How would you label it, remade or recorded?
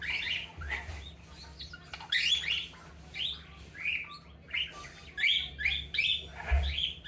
recorded